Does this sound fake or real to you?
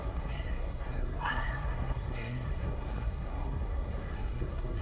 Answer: fake